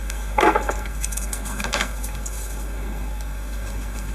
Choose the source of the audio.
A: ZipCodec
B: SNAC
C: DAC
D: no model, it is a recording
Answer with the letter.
B